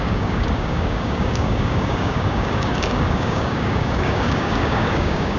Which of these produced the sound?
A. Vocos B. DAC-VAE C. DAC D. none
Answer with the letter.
C